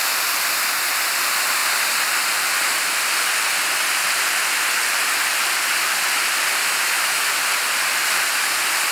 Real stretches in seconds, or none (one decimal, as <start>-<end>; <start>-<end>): 0.0-6.6; 7.2-8.9

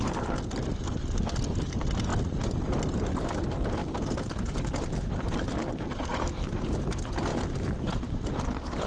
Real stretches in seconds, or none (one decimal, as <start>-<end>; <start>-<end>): 0.0-2.1; 2.8-3.8; 6.3-7.3

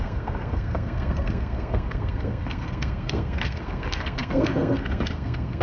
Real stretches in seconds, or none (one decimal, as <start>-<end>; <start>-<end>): none

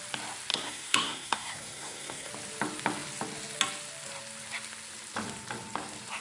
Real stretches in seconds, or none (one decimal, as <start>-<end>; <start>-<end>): 0.0-0.5; 2.3-6.2

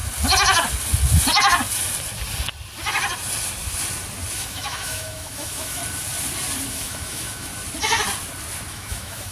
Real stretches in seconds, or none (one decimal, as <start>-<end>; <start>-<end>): 0.0-4.3; 5.8-6.7; 7.5-8.7

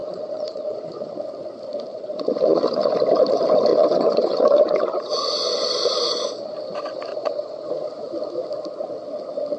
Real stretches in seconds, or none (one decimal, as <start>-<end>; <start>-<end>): 1.2-1.9; 2.9-3.7; 6.5-7.1; 7.7-9.6

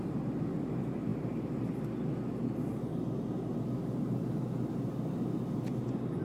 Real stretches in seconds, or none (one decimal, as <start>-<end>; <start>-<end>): 0.0-1.1; 1.9-6.2

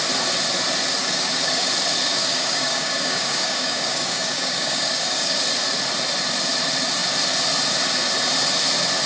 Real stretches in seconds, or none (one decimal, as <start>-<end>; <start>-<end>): 0.0-1.0; 1.7-2.1; 5.4-9.1